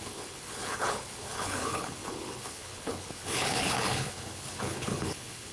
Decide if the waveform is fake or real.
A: fake